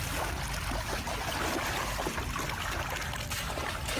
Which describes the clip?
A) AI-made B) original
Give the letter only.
B